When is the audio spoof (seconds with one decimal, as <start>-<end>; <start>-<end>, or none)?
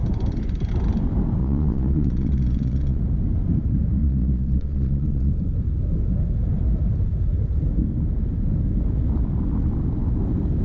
1.4-3.0; 4.0-5.3